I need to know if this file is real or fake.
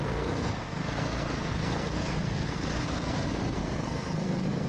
fake